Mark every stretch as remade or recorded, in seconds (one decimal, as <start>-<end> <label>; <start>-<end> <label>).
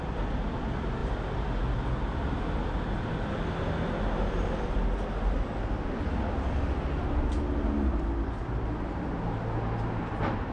0.0-10.5 recorded